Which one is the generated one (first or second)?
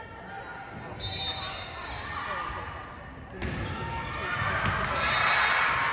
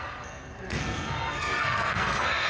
second